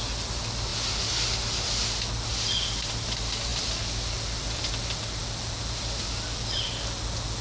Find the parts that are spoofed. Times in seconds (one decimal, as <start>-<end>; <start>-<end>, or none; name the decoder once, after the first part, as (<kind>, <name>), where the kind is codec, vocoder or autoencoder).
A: none